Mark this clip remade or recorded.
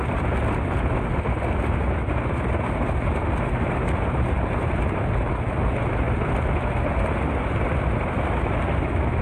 recorded